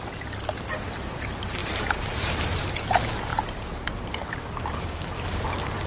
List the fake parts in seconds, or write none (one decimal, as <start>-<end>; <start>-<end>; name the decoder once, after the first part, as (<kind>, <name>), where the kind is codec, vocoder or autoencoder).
1.6-2.8 (vocoder, BigVGAN v2); 3.3-4.4